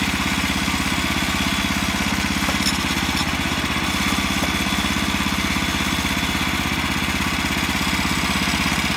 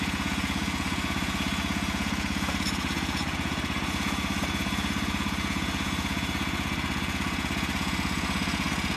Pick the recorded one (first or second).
first